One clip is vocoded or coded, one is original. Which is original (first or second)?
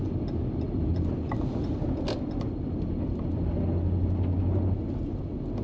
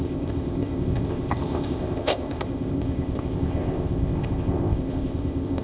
first